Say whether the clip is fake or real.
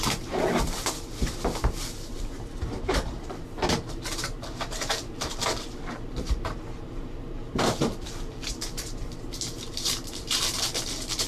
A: fake